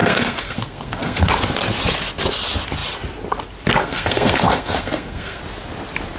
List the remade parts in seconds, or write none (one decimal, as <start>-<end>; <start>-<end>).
0.0-1.3; 3.8-5.4